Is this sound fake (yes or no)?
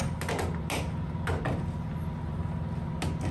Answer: no